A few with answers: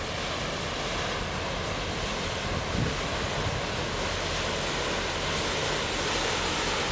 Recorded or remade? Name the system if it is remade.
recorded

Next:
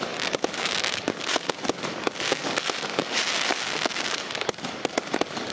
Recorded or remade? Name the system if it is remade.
remade, codec, DAC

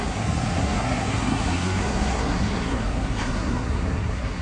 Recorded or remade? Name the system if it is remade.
remade, codec, SNAC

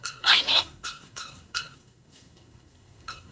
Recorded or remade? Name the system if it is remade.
remade, codec, SNAC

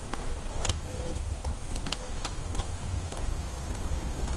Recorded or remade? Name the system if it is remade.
remade, codec, DAC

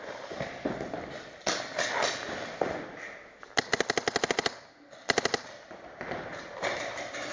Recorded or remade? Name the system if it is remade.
recorded